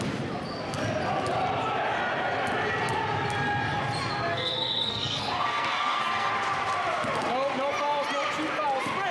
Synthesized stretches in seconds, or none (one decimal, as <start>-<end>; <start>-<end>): 4.3-6.3